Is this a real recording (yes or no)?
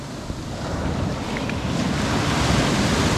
yes